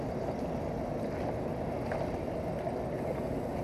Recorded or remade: recorded